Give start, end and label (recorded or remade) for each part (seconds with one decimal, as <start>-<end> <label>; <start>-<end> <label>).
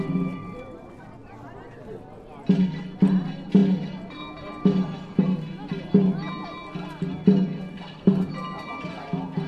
0.0-7.7 recorded; 7.7-8.3 remade; 8.3-9.5 recorded